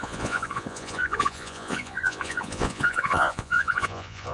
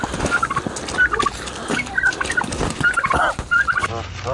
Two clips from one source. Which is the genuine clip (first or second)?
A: second